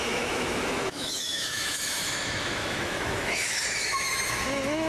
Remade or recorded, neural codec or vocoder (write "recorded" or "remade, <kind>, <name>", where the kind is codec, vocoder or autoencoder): remade, autoencoder, DAC-VAE